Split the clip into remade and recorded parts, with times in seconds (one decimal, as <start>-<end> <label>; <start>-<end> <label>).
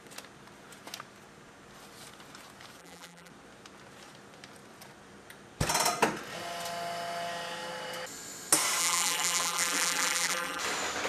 0.0-2.8 recorded; 2.8-3.3 remade; 3.3-8.8 recorded; 8.8-10.6 remade; 10.6-11.1 recorded